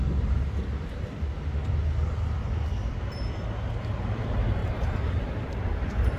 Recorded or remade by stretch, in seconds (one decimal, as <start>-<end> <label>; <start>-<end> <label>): 0.0-2.6 recorded; 2.6-3.7 remade; 3.7-4.6 recorded; 4.6-6.2 remade